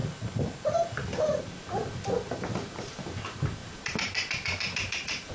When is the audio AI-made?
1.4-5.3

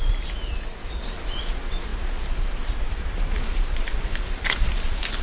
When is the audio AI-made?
0.8-1.4; 1.9-5.2

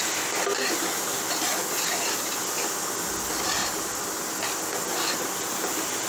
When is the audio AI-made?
3.6-4.2

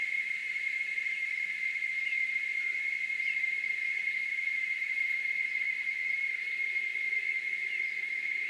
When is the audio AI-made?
0.0-6.9; 7.8-8.5